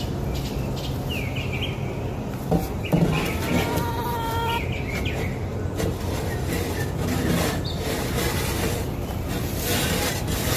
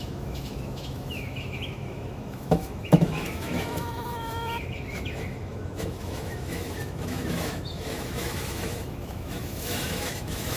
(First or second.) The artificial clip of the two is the second